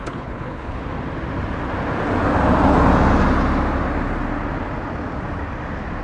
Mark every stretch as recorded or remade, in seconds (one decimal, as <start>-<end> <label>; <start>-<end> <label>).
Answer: 0.0-0.8 remade; 0.8-6.0 recorded

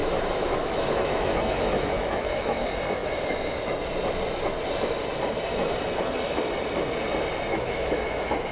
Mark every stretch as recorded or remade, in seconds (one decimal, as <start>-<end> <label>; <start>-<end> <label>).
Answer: 0.0-2.6 remade; 2.6-7.5 recorded; 7.5-8.5 remade